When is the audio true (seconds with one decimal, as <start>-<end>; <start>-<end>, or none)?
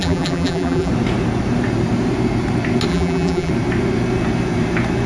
0.9-2.9; 3.5-5.1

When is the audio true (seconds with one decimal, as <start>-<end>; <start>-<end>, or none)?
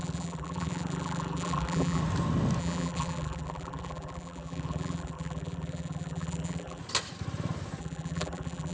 2.0-2.6; 6.8-7.8